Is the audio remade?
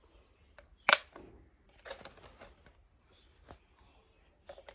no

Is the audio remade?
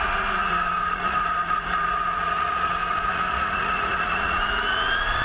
yes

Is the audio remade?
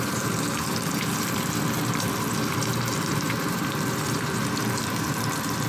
yes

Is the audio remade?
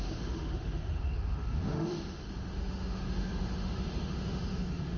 yes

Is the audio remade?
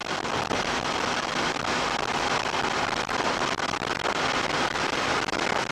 no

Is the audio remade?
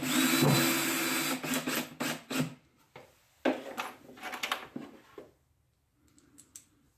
no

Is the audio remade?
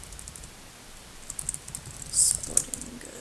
no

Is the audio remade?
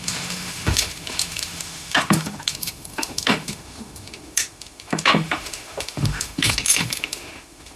yes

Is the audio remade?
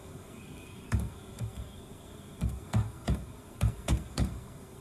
yes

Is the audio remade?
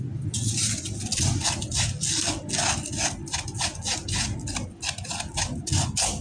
no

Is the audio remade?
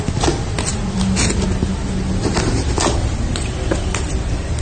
no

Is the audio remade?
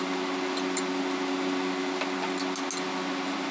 no